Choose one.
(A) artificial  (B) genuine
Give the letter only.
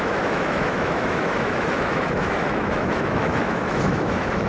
A